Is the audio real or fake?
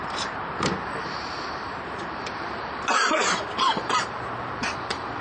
fake